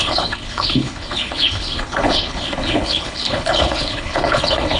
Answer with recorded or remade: remade